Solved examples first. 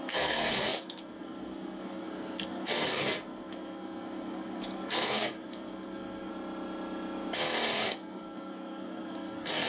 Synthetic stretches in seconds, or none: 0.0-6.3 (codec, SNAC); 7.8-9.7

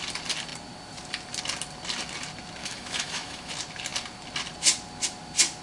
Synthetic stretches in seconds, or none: 2.6-3.5 (autoencoder, DAC-VAE)

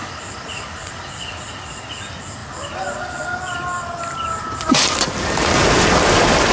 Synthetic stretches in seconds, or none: none

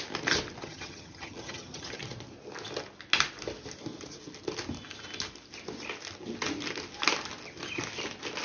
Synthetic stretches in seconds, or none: 0.6-2.0 (vocoder, HiFi-GAN)

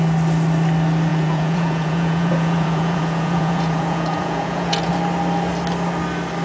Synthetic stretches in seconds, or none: 1.1-4.9 (vocoder, Vocos)

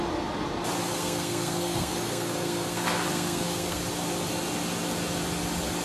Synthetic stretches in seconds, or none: 0.8-3.8 (codec, SNAC)

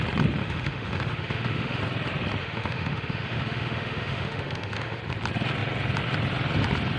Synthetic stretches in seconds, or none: 0.4-1.8 (autoencoder, DAC-VAE); 2.4-5.0